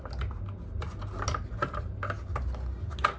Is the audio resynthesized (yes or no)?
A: no